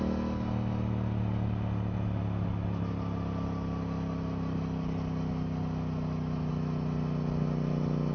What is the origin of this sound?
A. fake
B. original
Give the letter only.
B